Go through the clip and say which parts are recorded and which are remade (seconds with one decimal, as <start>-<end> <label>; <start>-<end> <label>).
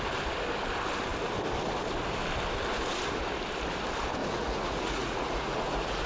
0.0-4.2 recorded; 4.2-6.1 remade